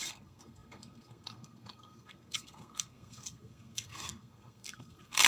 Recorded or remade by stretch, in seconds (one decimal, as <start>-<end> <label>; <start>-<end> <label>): 0.0-5.3 remade